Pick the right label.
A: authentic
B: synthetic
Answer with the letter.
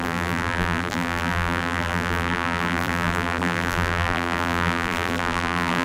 B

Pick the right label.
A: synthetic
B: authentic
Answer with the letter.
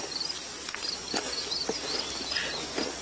B